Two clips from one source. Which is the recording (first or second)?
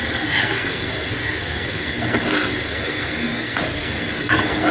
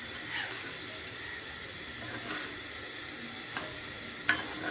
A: second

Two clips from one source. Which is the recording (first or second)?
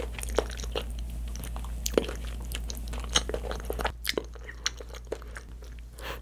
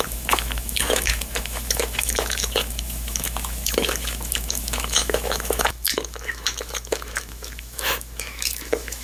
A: first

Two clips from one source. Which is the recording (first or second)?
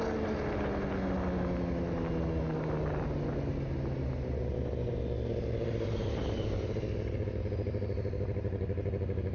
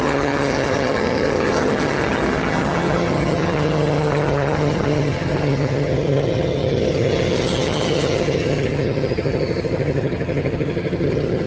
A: first